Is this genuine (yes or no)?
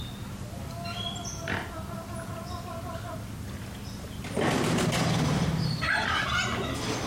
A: yes